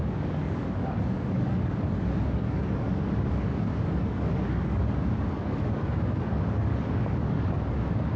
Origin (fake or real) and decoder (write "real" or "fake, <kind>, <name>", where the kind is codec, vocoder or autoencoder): fake, codec, DAC